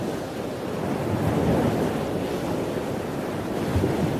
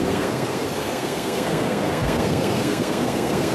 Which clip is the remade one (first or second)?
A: second